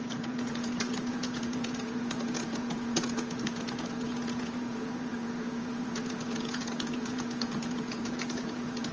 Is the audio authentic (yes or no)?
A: no